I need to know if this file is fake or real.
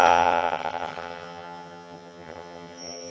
fake